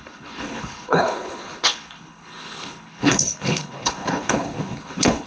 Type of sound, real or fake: fake